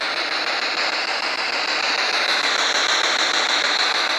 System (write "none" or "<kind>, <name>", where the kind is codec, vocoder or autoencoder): none